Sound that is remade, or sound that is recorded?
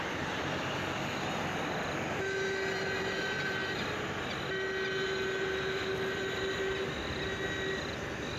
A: recorded